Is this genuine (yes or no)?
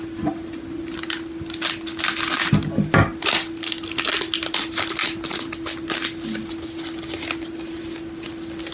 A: yes